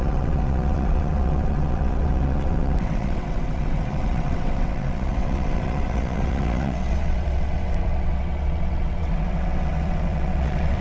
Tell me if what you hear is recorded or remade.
remade